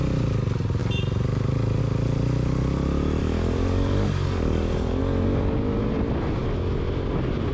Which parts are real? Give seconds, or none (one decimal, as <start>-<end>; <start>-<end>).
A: 0.0-3.2; 5.0-7.5